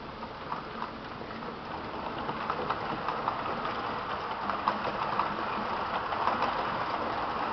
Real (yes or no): yes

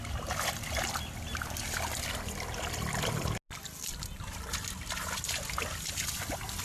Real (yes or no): yes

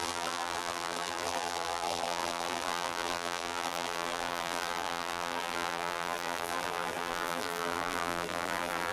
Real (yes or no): no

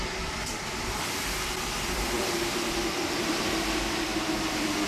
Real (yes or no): no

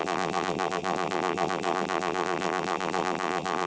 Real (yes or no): no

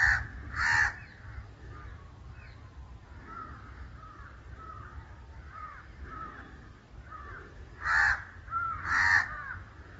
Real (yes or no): yes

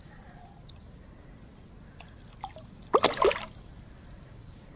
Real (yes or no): yes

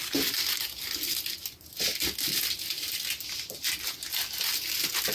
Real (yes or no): yes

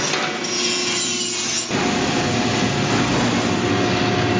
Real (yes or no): yes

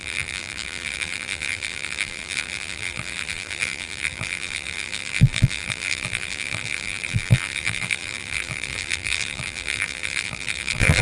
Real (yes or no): no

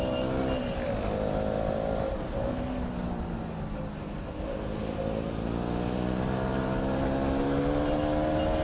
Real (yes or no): yes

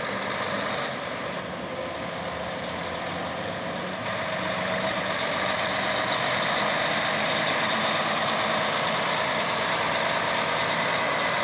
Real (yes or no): yes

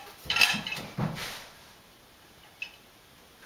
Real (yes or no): no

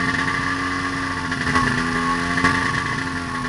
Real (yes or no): yes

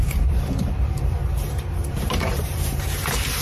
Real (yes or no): no